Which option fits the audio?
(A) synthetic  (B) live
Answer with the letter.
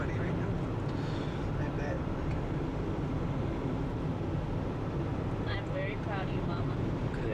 B